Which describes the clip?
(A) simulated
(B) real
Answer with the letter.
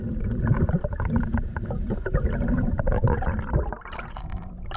A